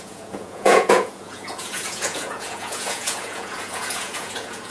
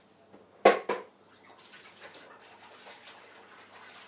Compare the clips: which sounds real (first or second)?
second